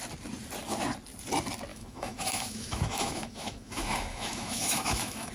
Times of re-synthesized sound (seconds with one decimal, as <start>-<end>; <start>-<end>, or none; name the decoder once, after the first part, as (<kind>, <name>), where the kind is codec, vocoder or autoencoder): 1.7-5.3 (autoencoder, DAC-VAE)